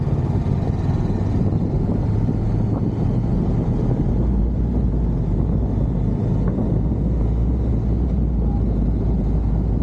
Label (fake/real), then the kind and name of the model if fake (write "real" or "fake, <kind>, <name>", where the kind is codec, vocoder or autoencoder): real